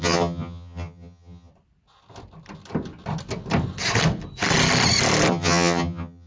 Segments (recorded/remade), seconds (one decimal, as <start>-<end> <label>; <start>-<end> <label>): 0.0-1.5 remade; 1.5-5.3 recorded; 5.3-6.3 remade